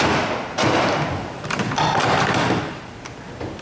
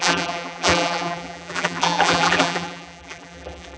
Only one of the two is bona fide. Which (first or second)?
first